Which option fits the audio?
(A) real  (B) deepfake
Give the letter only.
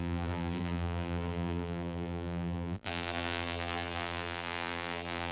B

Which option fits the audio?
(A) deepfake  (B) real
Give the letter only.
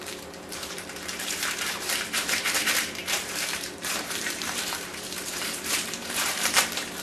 A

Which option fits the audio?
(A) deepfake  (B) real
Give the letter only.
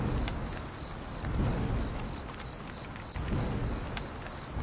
B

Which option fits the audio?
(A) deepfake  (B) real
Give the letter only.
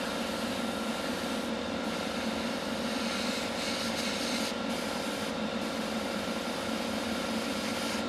B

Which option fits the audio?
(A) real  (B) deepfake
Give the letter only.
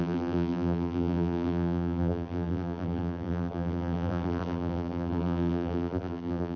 B